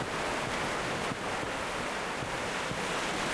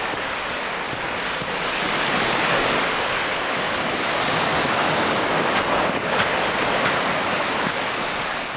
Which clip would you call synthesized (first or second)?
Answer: second